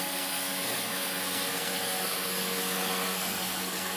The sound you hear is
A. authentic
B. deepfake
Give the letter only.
B